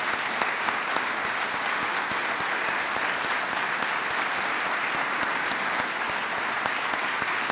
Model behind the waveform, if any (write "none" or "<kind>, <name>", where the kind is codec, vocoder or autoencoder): none